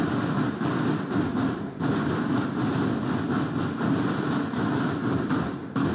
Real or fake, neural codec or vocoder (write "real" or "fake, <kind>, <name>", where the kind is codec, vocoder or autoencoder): real